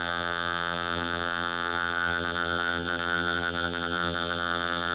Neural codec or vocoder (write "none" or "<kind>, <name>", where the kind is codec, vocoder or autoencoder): vocoder, BigVGAN v2